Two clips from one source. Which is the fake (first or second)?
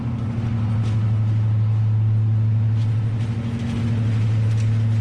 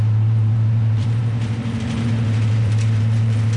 second